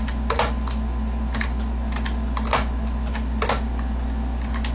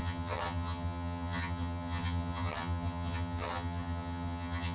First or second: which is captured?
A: first